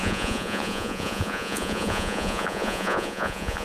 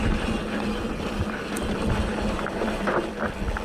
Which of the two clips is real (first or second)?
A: second